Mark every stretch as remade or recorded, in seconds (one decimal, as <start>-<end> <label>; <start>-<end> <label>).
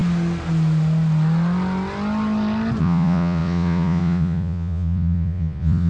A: 0.0-2.8 recorded; 2.8-5.9 remade